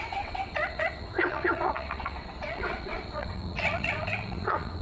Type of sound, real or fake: fake